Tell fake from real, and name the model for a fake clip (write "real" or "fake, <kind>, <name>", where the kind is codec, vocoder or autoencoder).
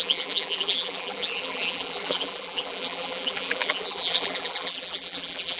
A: fake, vocoder, BigVGAN v2